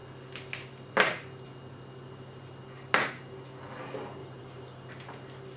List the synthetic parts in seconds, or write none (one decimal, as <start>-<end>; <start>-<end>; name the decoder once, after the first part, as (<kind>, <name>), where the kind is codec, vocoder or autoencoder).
4.2-4.9 (vocoder, BigVGAN v2)